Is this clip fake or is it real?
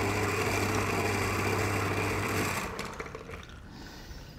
real